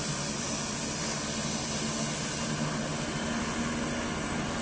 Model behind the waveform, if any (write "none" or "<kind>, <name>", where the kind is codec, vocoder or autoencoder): none